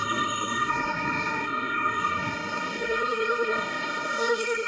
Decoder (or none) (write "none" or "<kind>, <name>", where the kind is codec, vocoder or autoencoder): codec, SNAC